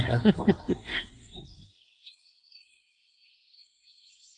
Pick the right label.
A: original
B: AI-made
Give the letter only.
B